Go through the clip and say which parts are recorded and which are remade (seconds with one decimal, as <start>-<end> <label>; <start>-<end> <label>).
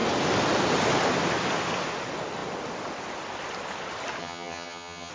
0.0-4.2 recorded; 4.2-5.1 remade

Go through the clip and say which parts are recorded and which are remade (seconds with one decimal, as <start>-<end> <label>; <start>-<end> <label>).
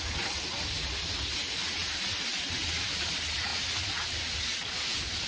0.0-1.8 recorded; 1.8-2.6 remade; 2.6-5.3 recorded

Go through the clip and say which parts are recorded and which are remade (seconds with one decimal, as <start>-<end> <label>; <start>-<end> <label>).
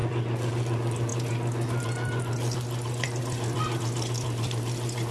0.0-5.1 recorded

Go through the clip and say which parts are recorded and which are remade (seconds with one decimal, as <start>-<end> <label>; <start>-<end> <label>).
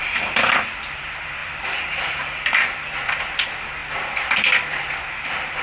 0.0-5.6 remade